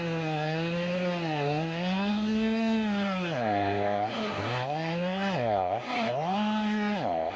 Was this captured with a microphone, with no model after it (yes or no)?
no